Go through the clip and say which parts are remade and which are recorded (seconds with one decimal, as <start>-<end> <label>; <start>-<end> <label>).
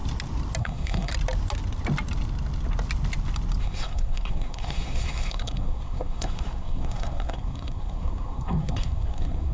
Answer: 0.0-0.6 recorded; 0.6-1.1 remade; 1.1-3.6 recorded; 3.6-9.5 remade